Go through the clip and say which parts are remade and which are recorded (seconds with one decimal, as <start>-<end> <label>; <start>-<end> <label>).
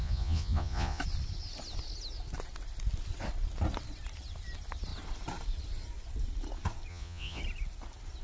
0.0-1.0 remade; 1.0-6.9 recorded; 6.9-7.4 remade; 7.4-8.2 recorded